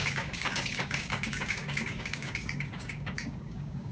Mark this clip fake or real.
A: fake